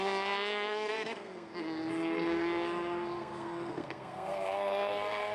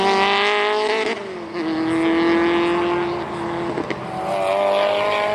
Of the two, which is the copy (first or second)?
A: first